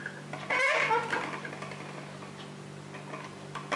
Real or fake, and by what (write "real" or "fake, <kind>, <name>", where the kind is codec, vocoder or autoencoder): real